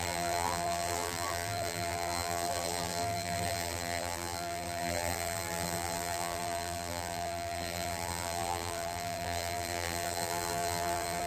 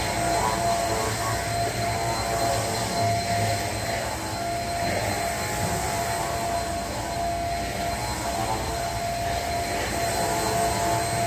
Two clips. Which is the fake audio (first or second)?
first